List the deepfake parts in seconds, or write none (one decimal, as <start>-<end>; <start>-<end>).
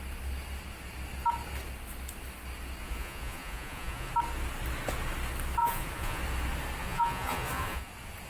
2.8-4.1; 5.6-6.2; 6.8-7.9